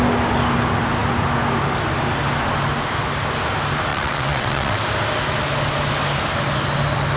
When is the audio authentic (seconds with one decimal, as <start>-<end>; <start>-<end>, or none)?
0.0-3.9; 4.8-7.2